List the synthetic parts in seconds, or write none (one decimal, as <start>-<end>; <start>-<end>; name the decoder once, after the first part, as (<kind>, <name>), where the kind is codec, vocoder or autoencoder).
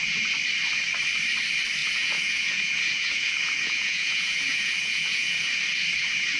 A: 1.8-5.5 (vocoder, Vocos)